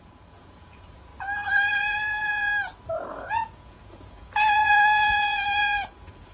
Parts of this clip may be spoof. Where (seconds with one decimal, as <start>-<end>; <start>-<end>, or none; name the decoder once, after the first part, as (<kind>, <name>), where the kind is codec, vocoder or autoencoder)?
0.0-1.1 (vocoder, Vocos); 1.7-2.5; 3.1-6.3